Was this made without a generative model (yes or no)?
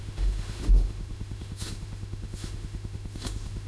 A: no